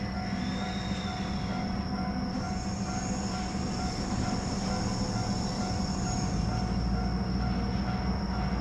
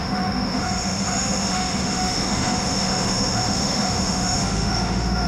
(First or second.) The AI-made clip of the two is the second